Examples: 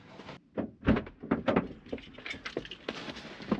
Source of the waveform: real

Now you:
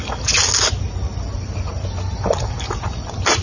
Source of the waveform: real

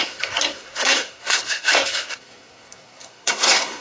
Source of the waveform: fake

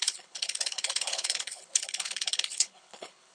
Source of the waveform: fake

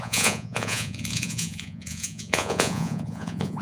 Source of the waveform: fake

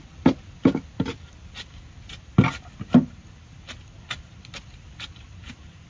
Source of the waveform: real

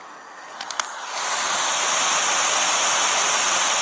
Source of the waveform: real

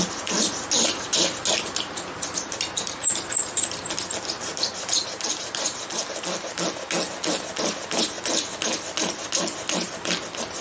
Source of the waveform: real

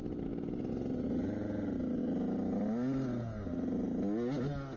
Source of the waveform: real